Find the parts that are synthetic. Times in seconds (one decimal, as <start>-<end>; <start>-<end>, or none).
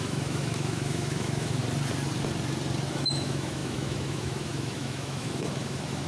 0.0-1.6; 2.9-6.1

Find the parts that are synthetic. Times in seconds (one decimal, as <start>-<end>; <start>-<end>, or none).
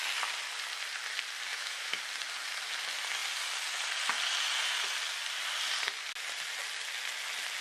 1.5-2.0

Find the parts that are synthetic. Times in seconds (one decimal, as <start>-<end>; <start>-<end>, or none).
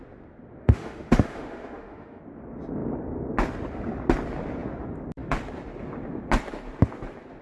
0.6-2.2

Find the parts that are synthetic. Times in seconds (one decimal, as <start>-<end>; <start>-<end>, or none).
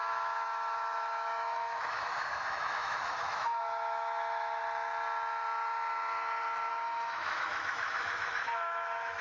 0.0-4.6; 6.7-9.2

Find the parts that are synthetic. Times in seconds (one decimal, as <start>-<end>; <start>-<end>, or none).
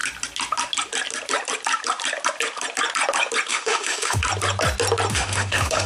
3.5-4.2; 5.1-5.9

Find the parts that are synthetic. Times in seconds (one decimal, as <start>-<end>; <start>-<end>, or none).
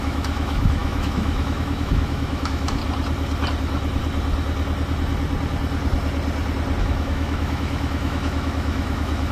0.0-2.8; 6.8-9.3